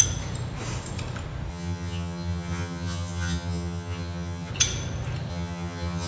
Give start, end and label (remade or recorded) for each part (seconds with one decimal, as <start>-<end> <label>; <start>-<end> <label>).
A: 0.0-1.5 recorded; 1.5-4.5 remade; 4.5-5.3 recorded; 5.3-6.1 remade